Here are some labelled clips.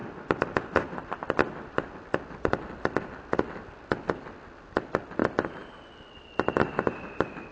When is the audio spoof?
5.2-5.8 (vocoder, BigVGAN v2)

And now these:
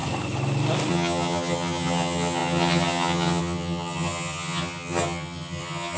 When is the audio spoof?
0.9-6.0 (vocoder, HiFi-GAN)

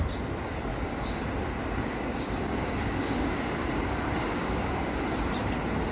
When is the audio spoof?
0.7-1.2 (codec, DAC); 1.8-5.3

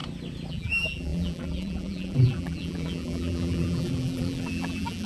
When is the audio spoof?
0.5-5.1 (vocoder, BigVGAN v2)